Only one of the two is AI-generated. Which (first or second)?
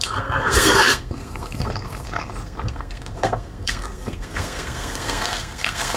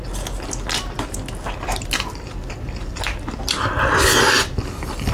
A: first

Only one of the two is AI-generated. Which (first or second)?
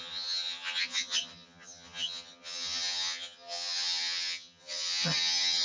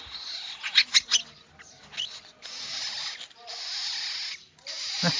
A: first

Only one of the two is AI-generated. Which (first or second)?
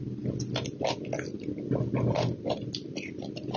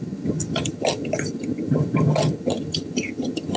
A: second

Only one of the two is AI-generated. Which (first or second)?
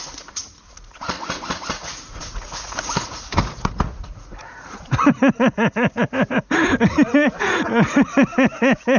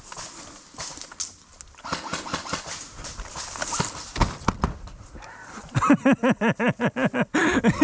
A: first